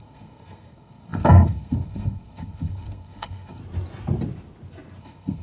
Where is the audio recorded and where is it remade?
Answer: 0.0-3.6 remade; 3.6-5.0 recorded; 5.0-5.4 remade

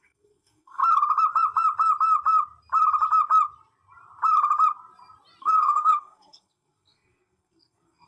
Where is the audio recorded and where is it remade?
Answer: 0.0-0.8 remade; 0.8-5.4 recorded; 5.4-8.1 remade

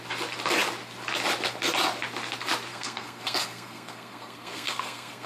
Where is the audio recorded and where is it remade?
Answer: 0.0-2.7 recorded; 2.7-5.3 remade